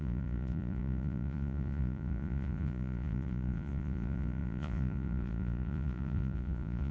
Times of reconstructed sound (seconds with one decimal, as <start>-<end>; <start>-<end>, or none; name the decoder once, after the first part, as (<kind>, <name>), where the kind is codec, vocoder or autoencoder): 0.0-6.9 (vocoder, Vocos)